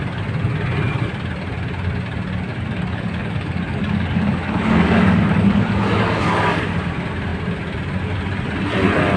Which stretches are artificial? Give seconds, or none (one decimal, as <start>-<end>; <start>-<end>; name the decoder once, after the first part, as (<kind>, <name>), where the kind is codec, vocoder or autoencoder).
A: 2.5-6.6 (codec, DAC)